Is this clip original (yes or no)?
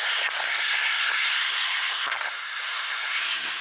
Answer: no